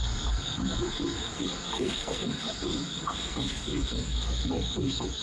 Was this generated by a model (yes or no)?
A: yes